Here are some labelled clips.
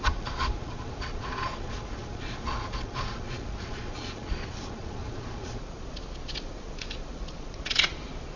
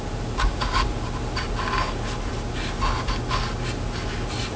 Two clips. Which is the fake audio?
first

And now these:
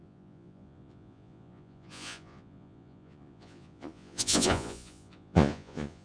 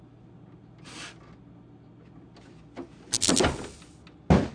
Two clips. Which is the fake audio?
first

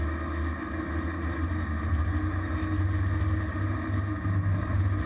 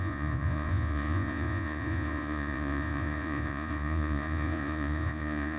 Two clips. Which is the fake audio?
second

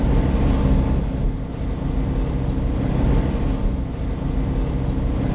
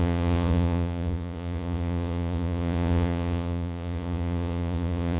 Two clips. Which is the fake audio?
second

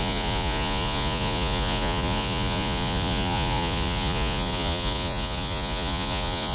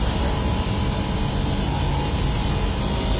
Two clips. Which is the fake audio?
first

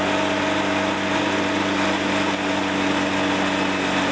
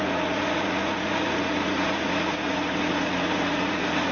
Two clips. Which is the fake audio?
second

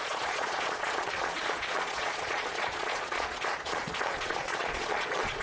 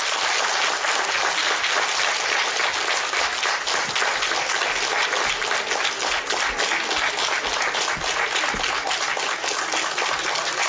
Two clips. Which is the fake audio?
first